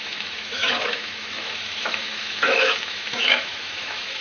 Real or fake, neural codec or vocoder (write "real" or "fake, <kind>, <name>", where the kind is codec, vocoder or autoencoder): fake, autoencoder, DAC-VAE